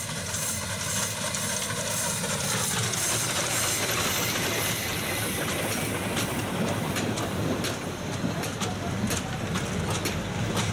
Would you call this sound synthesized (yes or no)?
no